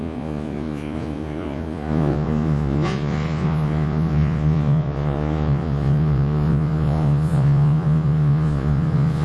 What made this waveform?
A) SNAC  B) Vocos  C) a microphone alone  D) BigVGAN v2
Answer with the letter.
B